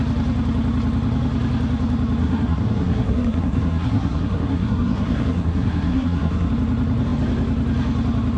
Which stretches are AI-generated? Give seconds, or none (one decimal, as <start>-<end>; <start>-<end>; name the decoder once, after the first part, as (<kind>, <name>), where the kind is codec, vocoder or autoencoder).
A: 2.2-6.5 (codec, SNAC)